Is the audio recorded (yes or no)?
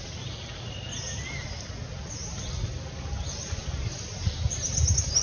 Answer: yes